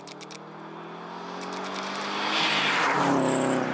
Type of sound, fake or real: real